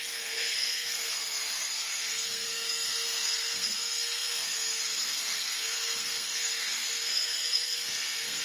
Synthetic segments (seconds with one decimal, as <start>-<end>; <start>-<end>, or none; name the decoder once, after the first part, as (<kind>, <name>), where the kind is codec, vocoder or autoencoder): 0.0-8.4 (codec, SNAC)